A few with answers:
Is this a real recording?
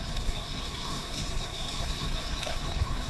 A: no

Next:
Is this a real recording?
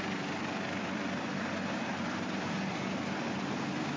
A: yes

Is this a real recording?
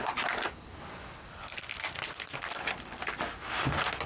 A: yes